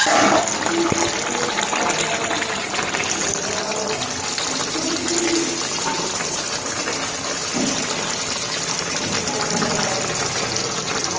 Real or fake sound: real